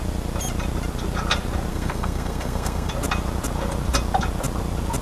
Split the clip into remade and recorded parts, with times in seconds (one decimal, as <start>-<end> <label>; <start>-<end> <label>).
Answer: 0.0-1.7 recorded; 1.7-2.9 remade; 2.9-5.0 recorded